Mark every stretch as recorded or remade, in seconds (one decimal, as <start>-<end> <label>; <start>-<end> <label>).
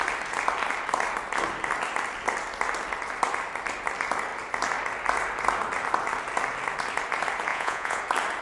0.0-7.5 recorded; 7.5-8.0 remade; 8.0-8.4 recorded